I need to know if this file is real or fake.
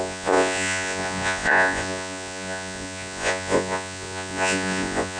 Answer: fake